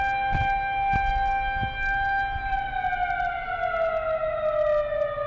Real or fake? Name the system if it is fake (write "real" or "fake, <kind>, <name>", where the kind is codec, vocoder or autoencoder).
real